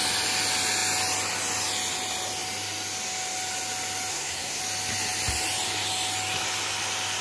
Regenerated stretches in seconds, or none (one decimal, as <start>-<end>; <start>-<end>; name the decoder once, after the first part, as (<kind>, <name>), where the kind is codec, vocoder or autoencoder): 4.1-4.6 (codec, SNAC)